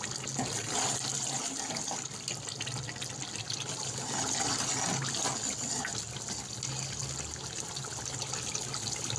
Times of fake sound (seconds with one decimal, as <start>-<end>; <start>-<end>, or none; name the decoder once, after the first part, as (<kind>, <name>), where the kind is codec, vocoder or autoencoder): none